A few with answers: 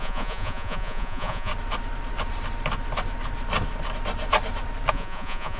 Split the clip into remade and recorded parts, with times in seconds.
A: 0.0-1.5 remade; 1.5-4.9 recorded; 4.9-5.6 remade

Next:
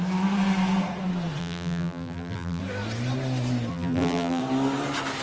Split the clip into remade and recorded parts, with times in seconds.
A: 0.0-1.4 recorded; 1.4-2.6 remade; 2.6-3.7 recorded; 3.7-4.4 remade; 4.4-5.2 recorded

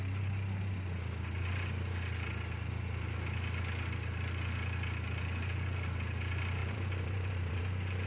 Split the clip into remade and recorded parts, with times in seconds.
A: 0.0-6.6 recorded; 6.6-7.6 remade; 7.6-8.1 recorded

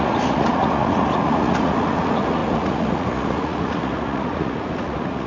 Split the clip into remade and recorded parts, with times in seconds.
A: 0.0-5.3 remade

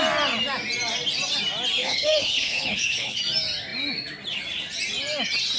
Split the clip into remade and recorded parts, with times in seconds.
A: 0.0-1.8 recorded; 1.8-3.2 remade; 3.2-5.6 recorded

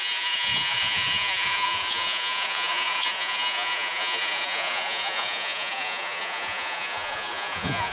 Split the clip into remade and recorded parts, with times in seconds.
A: 0.0-7.9 remade

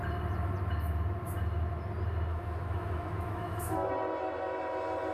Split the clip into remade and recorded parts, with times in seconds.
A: 0.0-2.3 recorded; 2.3-3.9 remade; 3.9-5.1 recorded

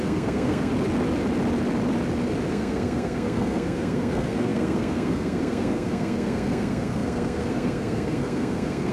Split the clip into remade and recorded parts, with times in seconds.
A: 0.0-0.7 remade; 0.7-2.5 recorded; 2.5-8.9 remade